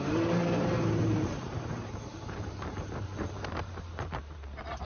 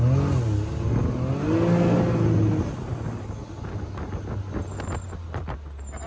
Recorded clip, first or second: second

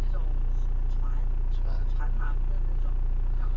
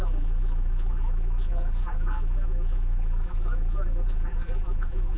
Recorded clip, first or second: first